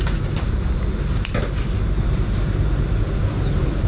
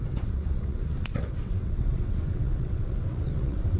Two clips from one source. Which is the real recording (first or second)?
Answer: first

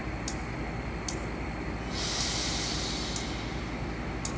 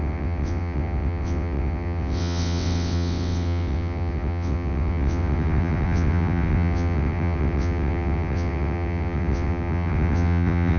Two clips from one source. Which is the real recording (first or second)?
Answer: first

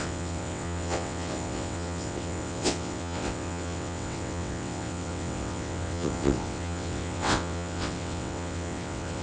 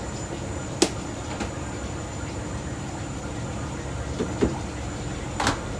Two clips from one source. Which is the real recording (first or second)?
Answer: second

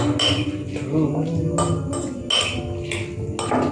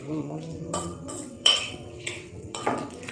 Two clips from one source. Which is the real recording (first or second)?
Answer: first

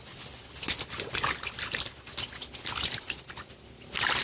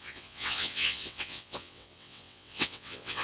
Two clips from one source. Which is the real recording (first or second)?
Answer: first